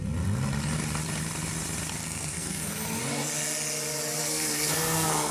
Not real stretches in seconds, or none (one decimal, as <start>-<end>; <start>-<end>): 2.0-3.0; 4.2-5.3